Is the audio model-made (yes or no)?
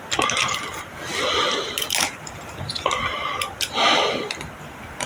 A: no